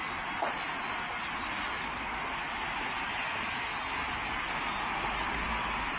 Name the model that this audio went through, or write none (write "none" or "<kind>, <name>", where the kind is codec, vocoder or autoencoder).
none